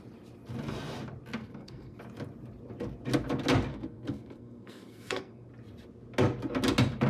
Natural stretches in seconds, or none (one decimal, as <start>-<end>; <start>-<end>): 0.0-1.4; 2.0-3.7; 5.5-7.1